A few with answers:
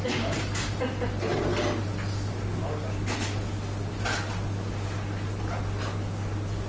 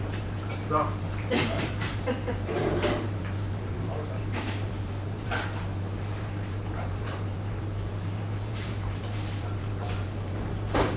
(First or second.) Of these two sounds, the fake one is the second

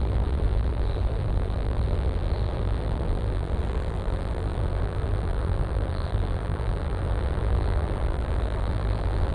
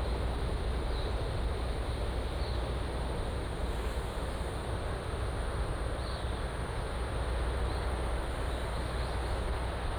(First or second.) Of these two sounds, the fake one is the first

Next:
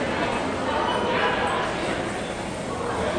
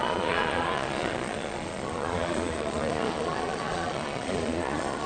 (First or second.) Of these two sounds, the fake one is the second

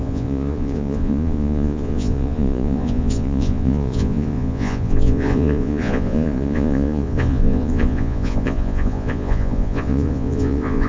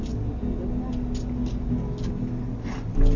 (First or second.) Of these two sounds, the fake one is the first